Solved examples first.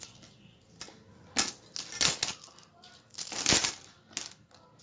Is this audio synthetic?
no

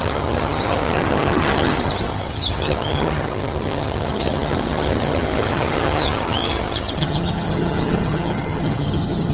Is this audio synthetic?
yes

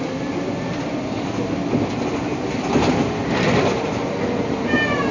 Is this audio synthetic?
no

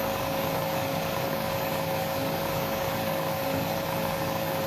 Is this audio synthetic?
yes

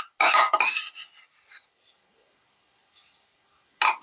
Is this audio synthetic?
no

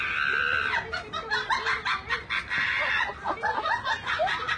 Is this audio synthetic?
no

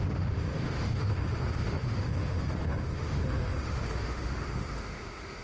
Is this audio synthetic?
yes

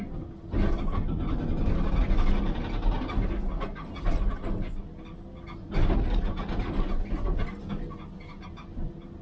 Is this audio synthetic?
no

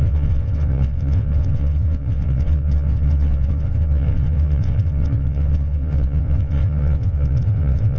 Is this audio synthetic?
yes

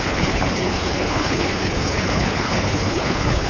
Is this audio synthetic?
yes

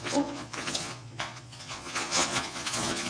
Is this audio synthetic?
yes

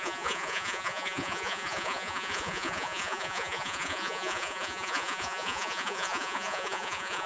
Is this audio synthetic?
yes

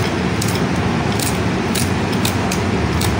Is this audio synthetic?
no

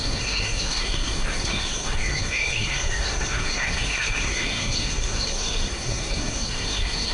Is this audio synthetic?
yes